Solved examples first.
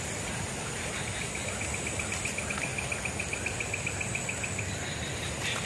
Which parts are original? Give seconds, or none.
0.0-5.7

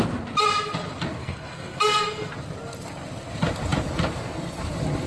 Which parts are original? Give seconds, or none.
0.0-1.2; 2.3-5.1

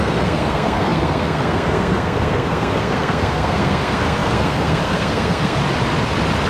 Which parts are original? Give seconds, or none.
5.6-6.5

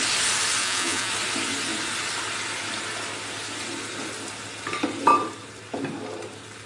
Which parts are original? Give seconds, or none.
0.0-0.6; 1.1-6.7